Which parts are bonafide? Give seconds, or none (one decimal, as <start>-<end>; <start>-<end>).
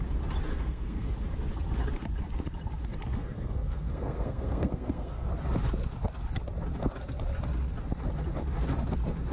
0.0-0.5; 1.1-3.1; 5.3-9.3